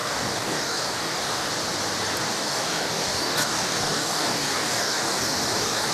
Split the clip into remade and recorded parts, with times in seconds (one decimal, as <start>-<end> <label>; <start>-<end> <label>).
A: 0.0-1.5 remade; 1.5-2.3 recorded; 2.3-5.9 remade